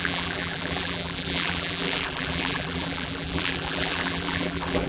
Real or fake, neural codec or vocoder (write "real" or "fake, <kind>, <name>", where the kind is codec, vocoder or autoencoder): fake, vocoder, BigVGAN v2